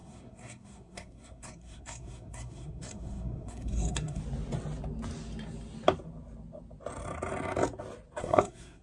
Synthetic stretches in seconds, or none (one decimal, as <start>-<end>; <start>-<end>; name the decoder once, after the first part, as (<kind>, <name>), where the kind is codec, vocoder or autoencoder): 0.0-4.2 (codec, SNAC); 8.2-8.8